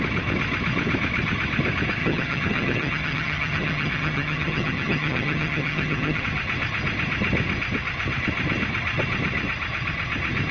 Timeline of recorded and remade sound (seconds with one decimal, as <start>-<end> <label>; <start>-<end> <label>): 0.0-2.0 recorded; 2.0-6.2 remade; 6.2-10.5 recorded